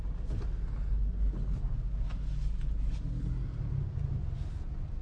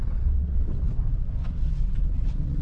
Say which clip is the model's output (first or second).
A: second